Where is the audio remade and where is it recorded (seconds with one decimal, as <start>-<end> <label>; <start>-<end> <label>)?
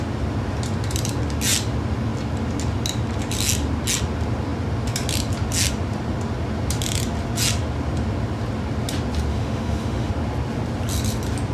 0.0-9.3 recorded; 9.3-10.1 remade; 10.1-11.5 recorded